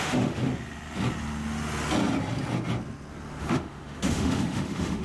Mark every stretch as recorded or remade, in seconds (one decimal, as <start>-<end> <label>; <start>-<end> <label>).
0.0-0.4 remade; 0.4-3.4 recorded; 3.4-5.0 remade